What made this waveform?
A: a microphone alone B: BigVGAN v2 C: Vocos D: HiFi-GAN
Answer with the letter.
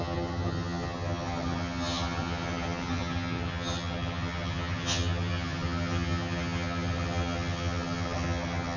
D